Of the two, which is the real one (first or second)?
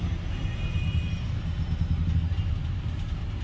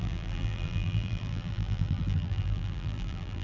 first